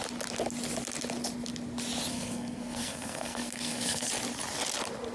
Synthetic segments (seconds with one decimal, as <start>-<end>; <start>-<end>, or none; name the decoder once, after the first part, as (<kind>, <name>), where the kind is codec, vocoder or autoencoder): 2.1-4.1 (codec, SNAC)